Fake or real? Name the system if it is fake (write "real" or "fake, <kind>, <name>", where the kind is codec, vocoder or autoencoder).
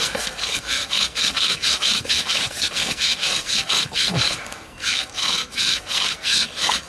fake, codec, SNAC